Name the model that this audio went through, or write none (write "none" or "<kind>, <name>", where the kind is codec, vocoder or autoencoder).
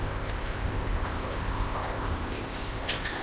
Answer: codec, ZipCodec